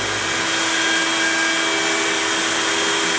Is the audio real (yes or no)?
yes